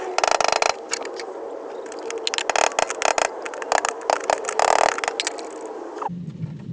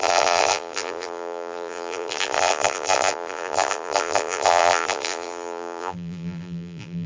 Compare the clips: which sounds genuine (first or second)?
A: first